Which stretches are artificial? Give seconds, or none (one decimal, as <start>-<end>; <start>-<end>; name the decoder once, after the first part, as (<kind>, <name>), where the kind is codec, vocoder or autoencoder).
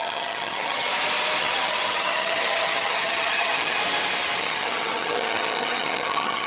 0.0-0.9 (vocoder, HiFi-GAN); 1.4-3.8; 4.4-6.5